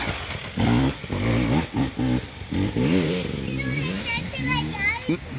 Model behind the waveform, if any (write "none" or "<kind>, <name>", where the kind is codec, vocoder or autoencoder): none